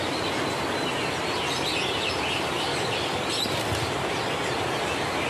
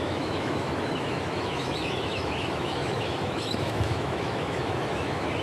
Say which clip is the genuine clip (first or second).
first